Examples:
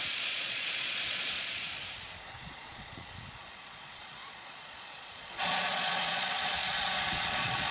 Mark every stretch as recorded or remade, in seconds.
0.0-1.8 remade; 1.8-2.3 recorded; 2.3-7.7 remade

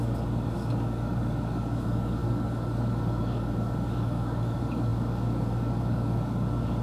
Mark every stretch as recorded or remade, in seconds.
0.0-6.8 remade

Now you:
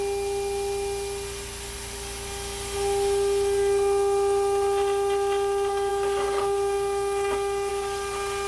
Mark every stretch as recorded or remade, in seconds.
0.0-5.9 recorded; 5.9-7.7 remade; 7.7-8.5 recorded

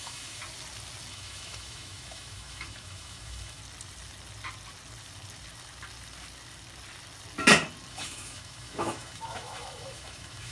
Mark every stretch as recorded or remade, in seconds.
0.0-0.4 remade; 0.4-1.1 recorded; 1.1-3.6 remade; 3.6-7.9 recorded; 7.9-10.5 remade